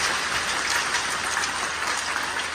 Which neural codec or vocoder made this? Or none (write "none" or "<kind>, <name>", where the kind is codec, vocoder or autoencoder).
none